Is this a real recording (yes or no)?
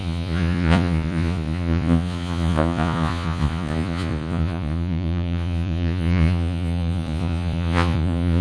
no